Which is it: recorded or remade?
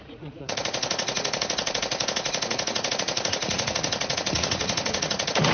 remade